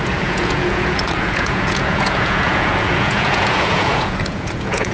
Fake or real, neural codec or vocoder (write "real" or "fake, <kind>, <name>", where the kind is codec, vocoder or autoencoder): fake, vocoder, Vocos